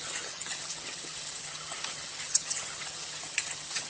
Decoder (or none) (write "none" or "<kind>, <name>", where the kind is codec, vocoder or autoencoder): vocoder, HiFi-GAN